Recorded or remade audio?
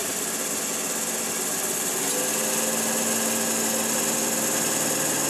recorded